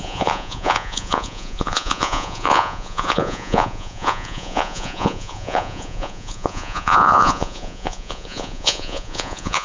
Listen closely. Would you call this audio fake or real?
fake